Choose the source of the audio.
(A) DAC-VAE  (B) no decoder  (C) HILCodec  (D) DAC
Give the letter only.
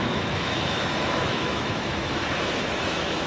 A